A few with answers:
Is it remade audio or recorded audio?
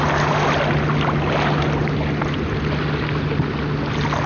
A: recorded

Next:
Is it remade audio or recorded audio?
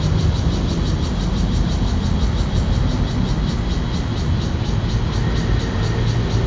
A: recorded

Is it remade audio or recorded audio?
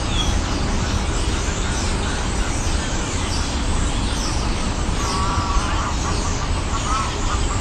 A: recorded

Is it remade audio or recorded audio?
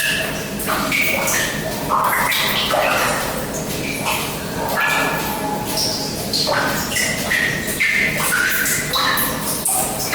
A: recorded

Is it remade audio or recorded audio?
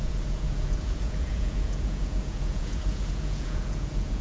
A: remade